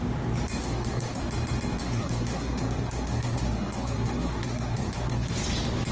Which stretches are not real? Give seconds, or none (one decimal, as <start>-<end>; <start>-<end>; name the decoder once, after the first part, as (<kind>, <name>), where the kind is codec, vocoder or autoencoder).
0.6-1.2 (codec, SNAC); 1.8-5.3